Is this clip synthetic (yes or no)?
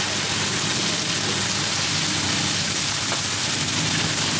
no